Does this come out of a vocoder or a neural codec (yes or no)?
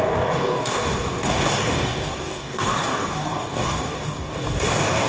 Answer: yes